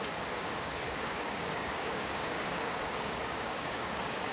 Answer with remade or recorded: remade